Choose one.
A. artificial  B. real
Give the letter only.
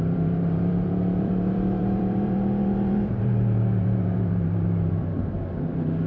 A